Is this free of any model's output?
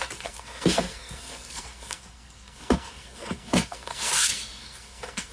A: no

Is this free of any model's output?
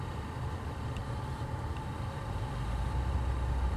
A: yes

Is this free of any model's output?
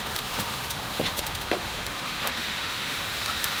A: no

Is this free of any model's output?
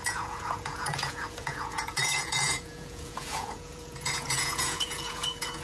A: no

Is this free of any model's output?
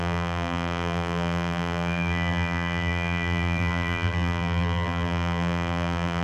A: no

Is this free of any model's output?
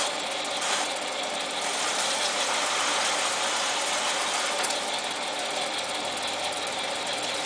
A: no